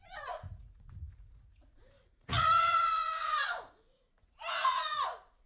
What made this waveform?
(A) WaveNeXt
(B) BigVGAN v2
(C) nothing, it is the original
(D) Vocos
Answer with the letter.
D